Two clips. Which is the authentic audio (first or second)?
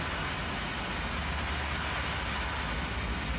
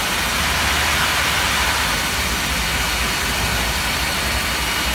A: first